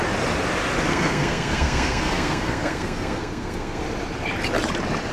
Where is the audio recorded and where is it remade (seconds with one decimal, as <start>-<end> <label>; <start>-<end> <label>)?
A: 0.0-0.9 recorded; 0.9-3.8 remade; 3.8-5.1 recorded